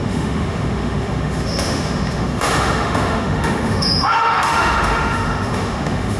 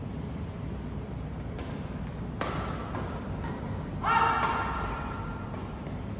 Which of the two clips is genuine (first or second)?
second